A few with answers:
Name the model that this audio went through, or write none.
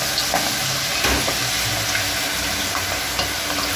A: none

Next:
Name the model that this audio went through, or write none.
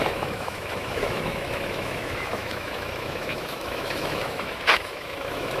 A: autoencoder, DAC-VAE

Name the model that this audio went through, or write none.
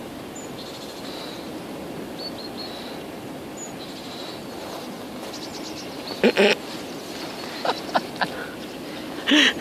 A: none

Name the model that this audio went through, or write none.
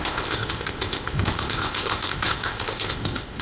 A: codec, ZipCodec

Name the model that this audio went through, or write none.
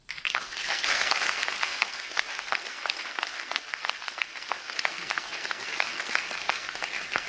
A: codec, SNAC